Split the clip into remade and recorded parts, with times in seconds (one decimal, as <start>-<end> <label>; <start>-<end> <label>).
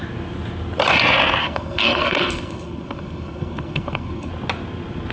0.0-1.4 recorded; 1.4-4.3 remade; 4.3-5.1 recorded